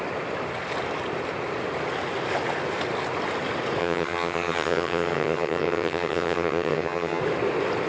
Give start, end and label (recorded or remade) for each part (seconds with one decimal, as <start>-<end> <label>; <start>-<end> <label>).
0.0-3.8 recorded; 3.8-7.2 remade; 7.2-7.9 recorded